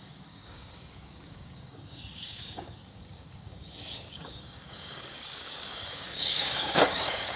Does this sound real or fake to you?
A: fake